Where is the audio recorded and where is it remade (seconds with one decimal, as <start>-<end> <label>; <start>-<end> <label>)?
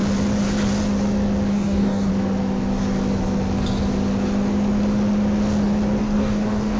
0.0-1.5 recorded; 1.5-2.1 remade; 2.1-6.0 recorded; 6.0-6.8 remade